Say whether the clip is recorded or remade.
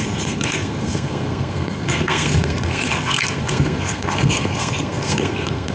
remade